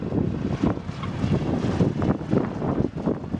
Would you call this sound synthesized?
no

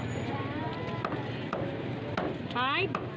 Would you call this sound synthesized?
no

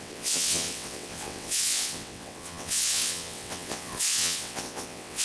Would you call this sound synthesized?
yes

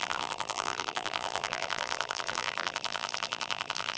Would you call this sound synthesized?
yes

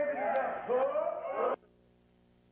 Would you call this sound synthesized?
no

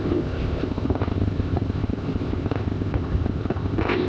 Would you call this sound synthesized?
yes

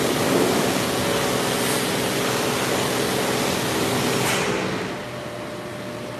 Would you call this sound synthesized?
no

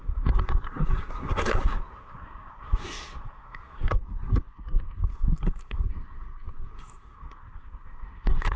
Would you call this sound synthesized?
yes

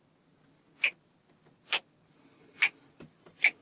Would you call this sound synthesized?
no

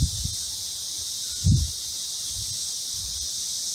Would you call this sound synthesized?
no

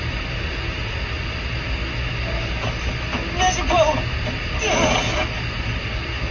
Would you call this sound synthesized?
no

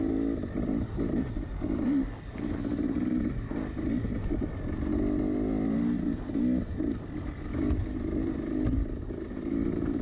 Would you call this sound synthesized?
no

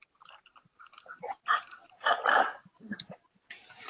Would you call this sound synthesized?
yes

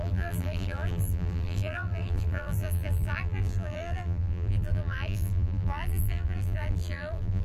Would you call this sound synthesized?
yes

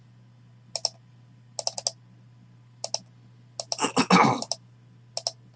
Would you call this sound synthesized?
no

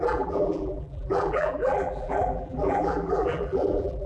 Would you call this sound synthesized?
yes